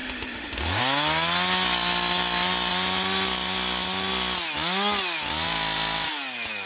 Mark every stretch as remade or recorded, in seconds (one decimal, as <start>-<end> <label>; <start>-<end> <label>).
0.0-0.8 remade; 0.8-6.7 recorded